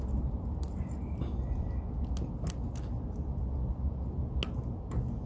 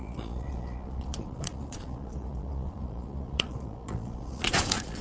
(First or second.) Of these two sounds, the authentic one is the first